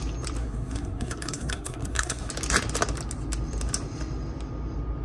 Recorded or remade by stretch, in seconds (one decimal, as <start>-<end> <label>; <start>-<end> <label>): 0.0-0.4 recorded; 0.4-2.3 remade; 2.3-5.0 recorded